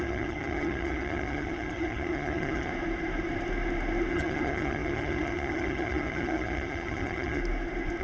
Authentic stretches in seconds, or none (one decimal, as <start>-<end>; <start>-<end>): 2.7-4.1; 7.4-8.0